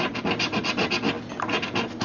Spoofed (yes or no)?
no